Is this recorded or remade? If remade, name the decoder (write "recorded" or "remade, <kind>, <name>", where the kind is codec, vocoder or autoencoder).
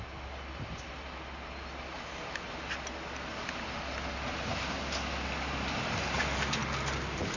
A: recorded